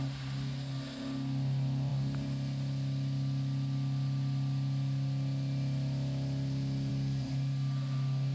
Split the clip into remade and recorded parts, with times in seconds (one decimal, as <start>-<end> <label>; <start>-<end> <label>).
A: 0.0-8.3 recorded